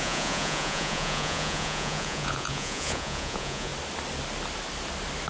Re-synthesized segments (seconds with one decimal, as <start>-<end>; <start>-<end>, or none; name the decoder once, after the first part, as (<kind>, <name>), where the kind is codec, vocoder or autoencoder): 0.0-3.7 (vocoder, Vocos)